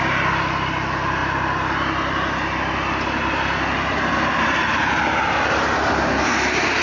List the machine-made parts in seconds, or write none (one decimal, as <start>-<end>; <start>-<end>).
none